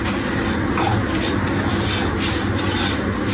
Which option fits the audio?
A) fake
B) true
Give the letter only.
B